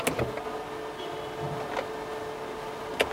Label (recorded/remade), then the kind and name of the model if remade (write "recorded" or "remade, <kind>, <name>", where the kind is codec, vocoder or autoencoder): recorded